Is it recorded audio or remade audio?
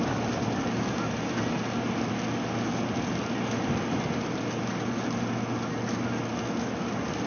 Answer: recorded